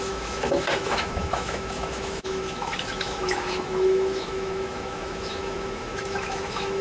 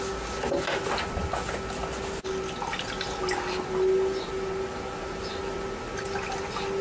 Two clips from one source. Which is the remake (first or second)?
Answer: first